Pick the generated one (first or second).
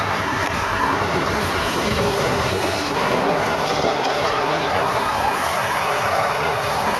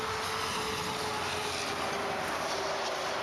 first